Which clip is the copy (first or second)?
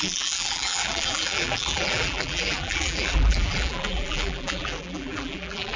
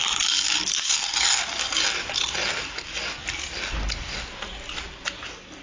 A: first